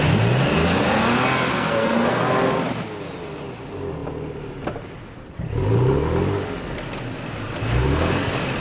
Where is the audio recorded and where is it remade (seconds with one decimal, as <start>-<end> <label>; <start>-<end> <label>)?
0.0-1.5 recorded; 1.5-2.2 remade; 2.2-8.6 recorded

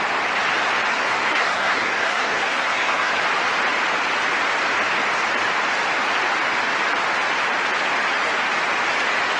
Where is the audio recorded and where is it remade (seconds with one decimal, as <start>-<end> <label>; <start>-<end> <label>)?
0.0-0.9 recorded; 0.9-3.1 remade; 3.1-9.4 recorded

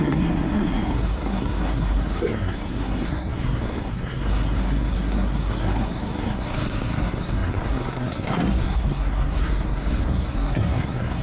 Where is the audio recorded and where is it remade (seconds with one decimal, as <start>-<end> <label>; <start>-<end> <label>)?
0.0-11.2 remade

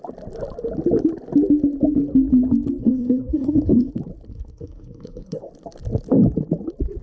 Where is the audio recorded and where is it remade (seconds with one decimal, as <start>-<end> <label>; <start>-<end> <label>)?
0.0-2.8 recorded; 2.8-3.9 remade; 3.9-4.3 recorded; 4.3-5.5 remade; 5.5-7.0 recorded

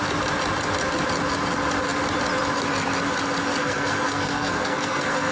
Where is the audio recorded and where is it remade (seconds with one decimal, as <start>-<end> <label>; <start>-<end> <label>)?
0.0-3.6 recorded; 3.6-5.3 remade

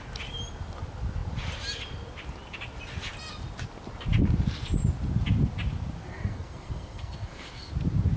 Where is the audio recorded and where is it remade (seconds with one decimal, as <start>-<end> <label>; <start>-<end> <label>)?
0.0-6.0 recorded; 6.0-7.7 remade; 7.7-8.2 recorded